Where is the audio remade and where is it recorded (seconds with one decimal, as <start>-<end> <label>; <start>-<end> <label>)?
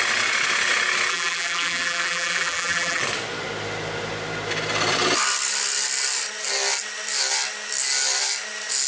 0.0-1.1 recorded; 1.1-3.0 remade; 3.0-8.9 recorded